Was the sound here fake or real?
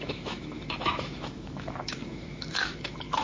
fake